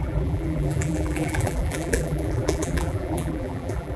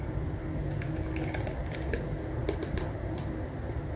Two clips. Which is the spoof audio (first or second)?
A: first